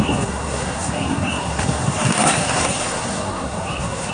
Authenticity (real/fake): fake